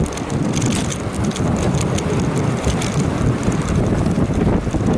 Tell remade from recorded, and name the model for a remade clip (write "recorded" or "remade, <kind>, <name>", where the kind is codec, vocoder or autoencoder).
recorded